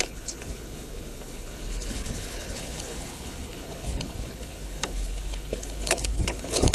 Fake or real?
fake